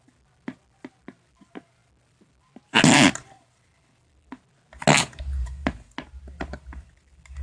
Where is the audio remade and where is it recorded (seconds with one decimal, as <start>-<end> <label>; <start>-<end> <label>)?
0.0-7.4 recorded